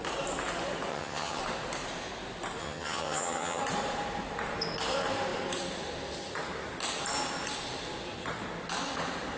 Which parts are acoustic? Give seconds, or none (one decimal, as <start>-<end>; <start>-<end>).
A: 0.0-0.9; 1.4-2.6; 3.6-9.4